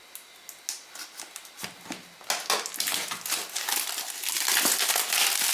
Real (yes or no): yes